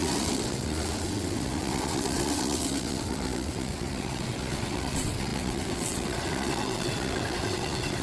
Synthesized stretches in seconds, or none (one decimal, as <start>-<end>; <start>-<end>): 0.0-8.0